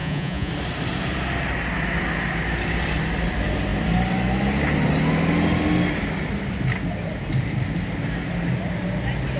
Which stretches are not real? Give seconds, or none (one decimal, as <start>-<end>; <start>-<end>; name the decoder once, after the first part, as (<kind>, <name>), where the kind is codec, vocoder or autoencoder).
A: 0.0-0.5 (vocoder, Vocos)